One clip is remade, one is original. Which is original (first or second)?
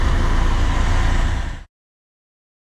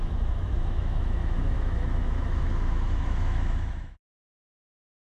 first